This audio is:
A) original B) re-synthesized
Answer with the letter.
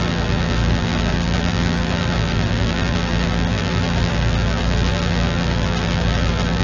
B